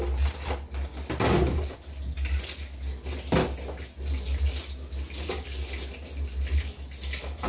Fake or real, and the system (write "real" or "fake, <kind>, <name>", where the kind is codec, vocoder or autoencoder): real